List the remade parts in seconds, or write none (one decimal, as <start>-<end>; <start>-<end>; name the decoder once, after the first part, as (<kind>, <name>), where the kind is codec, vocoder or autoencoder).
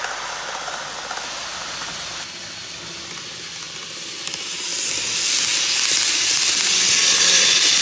none